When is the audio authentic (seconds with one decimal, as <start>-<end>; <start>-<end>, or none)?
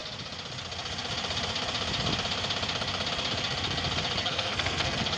0.0-4.2